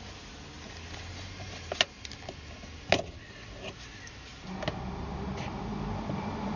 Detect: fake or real real